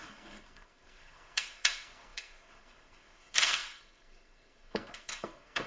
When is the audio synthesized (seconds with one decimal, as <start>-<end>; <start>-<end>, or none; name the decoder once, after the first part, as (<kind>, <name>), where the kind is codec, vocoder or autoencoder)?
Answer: 0.0-5.7 (codec, SNAC)